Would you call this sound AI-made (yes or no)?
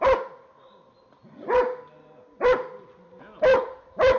no